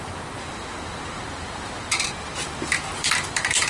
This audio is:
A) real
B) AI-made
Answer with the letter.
B